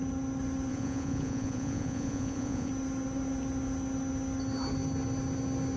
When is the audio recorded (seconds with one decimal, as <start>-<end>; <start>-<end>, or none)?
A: 0.0-0.7; 2.7-5.8